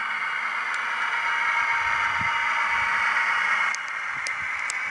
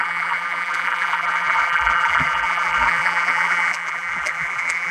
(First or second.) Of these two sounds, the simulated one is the second